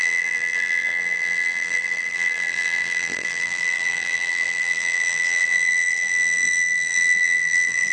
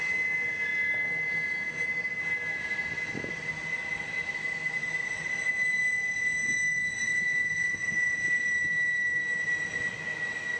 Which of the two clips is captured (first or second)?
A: second